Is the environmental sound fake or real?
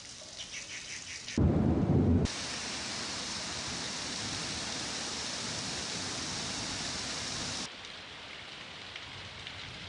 fake